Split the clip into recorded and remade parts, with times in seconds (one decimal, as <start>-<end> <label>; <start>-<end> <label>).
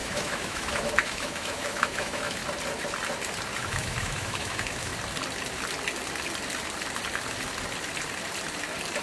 0.0-2.4 remade; 2.4-3.6 recorded; 3.6-4.9 remade; 4.9-9.0 recorded